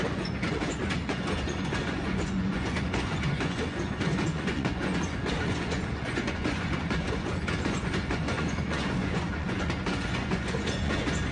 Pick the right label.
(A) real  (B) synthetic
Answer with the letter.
B